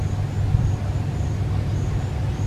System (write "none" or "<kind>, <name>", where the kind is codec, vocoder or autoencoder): none